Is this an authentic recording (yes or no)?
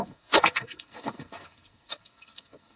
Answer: no